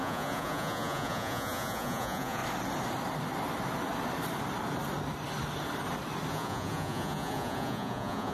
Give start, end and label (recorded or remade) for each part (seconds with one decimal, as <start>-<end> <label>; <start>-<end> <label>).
0.0-2.4 remade; 2.4-6.3 recorded; 6.3-8.3 remade